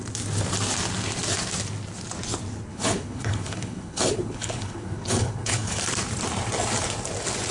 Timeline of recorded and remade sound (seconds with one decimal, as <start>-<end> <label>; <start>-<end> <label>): 0.0-2.7 recorded; 2.7-5.8 remade; 5.8-7.5 recorded